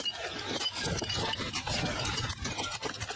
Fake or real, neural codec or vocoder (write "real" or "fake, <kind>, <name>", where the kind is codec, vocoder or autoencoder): real